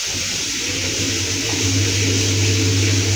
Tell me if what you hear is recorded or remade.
recorded